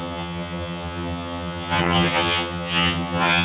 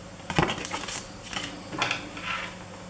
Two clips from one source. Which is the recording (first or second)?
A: second